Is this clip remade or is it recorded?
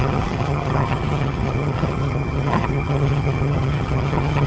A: remade